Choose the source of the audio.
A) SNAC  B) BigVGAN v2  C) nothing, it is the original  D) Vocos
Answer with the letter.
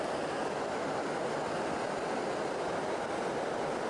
C